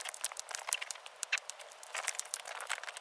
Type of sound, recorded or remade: remade